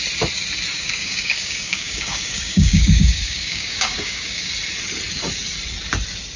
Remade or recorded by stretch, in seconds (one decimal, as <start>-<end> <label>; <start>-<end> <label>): 0.0-0.7 recorded; 0.7-4.5 remade; 4.5-6.4 recorded